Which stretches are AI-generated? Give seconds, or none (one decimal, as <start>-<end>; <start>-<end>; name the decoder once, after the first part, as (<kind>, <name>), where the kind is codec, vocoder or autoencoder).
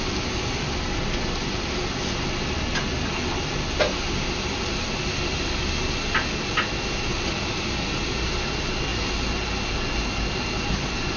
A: none